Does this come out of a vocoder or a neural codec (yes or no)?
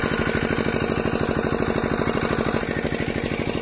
no